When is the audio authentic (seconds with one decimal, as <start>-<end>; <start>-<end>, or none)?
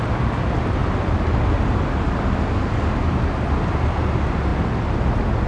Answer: 0.0-5.5